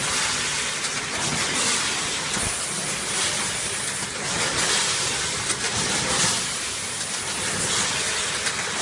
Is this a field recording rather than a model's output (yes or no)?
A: yes